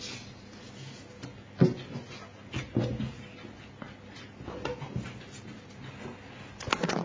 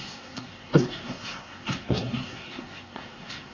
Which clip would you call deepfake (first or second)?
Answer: second